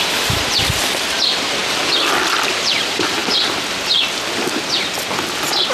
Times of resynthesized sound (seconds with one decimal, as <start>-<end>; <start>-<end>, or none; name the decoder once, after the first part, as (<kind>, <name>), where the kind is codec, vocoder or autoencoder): 0.0-1.6 (vocoder, BigVGAN v2); 2.8-3.2